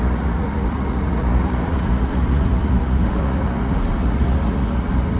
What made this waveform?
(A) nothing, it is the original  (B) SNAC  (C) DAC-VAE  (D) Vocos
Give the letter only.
D